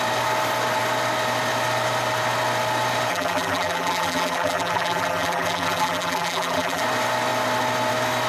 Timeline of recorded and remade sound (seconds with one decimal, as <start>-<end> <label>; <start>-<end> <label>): 0.0-3.1 recorded; 3.1-6.8 remade; 6.8-8.3 recorded